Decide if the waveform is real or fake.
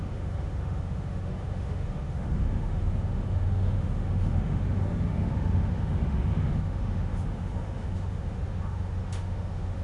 fake